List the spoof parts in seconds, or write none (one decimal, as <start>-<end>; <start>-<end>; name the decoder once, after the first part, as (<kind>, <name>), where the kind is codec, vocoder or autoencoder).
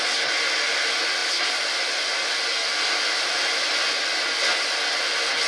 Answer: none